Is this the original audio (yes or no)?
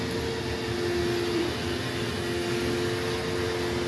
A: yes